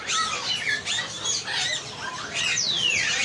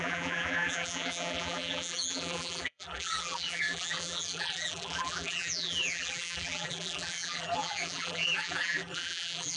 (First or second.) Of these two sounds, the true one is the first